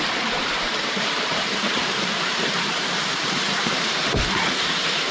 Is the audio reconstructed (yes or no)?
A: yes